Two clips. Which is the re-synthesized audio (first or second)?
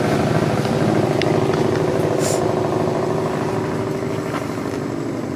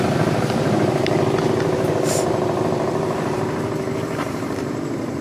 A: second